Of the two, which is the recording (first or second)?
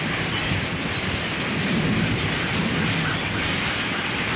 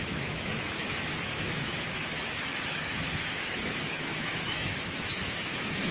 first